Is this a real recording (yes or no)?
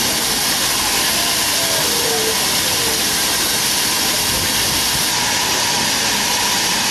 yes